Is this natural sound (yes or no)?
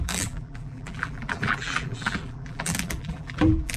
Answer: no